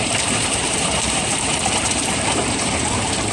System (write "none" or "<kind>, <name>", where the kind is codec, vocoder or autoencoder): vocoder, BigVGAN v2